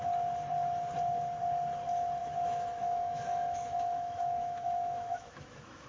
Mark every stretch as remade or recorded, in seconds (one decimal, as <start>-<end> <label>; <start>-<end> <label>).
0.0-2.2 recorded; 2.2-5.9 remade